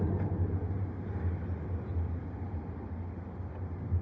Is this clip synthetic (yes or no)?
no